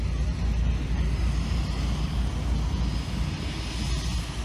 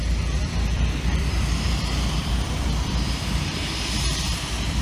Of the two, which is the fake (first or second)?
second